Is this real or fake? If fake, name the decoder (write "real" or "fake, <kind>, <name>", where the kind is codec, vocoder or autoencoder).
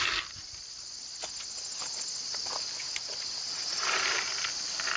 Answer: real